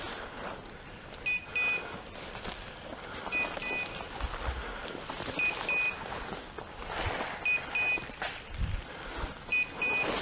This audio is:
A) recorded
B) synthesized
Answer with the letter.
A